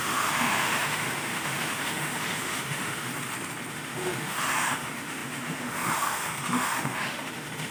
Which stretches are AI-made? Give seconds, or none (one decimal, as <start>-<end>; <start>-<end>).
0.0-3.1; 3.7-7.7